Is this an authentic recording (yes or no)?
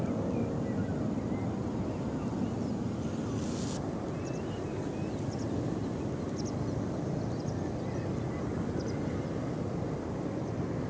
yes